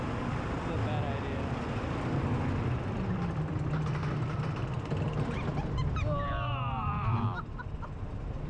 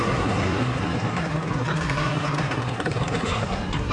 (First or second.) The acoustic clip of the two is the first